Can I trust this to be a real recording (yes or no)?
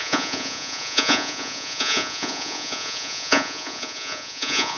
no